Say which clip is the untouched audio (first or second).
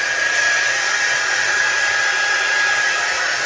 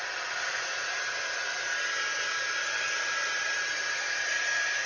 second